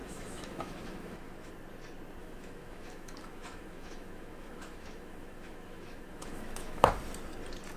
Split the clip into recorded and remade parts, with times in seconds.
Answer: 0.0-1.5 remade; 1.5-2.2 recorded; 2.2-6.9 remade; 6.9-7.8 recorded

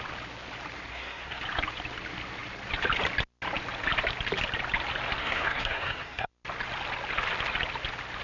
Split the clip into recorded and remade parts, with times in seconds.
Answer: 0.0-0.9 recorded; 0.9-1.4 remade; 1.4-5.2 recorded; 5.2-6.3 remade; 6.3-8.2 recorded